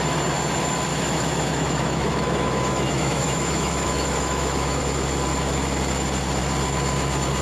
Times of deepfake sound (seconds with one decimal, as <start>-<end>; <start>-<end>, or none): 0.9-4.8